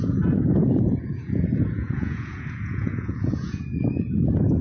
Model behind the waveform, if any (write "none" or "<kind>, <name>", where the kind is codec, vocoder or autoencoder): vocoder, Vocos